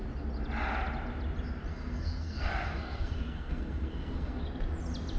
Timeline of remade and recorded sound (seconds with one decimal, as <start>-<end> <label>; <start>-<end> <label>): 0.0-1.7 recorded; 1.7-4.4 remade; 4.4-5.2 recorded